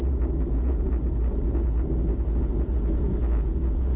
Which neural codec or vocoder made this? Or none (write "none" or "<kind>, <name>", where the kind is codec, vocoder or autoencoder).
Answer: none